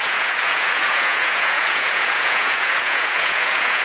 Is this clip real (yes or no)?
no